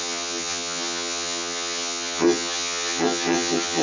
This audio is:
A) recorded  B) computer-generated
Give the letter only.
B